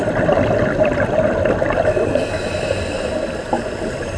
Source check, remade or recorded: recorded